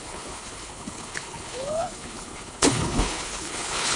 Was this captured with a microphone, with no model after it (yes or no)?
no